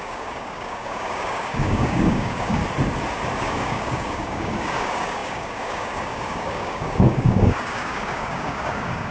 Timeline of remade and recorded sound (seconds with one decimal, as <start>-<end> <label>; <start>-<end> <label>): 0.0-2.6 remade; 2.6-3.4 recorded; 3.4-9.1 remade